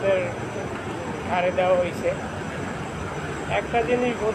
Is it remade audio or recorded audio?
recorded